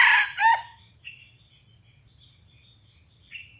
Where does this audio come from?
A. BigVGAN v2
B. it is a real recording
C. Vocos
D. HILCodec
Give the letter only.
B